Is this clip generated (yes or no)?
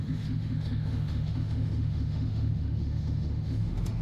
yes